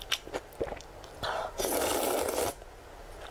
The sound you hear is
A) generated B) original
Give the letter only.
B